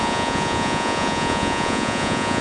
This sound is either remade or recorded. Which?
remade